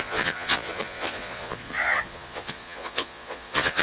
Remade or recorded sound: remade